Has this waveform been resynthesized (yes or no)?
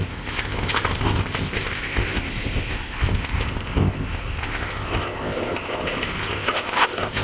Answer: yes